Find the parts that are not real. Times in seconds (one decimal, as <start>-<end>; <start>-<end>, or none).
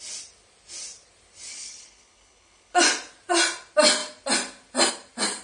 1.5-2.8